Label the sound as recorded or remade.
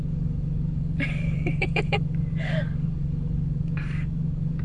remade